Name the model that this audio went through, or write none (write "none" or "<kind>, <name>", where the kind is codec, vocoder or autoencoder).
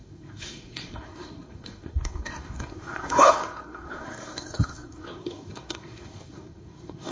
codec, SNAC